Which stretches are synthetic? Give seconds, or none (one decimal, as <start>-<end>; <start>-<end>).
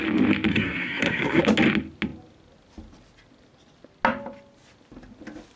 0.5-1.4